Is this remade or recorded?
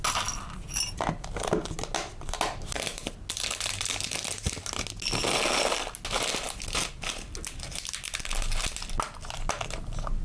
recorded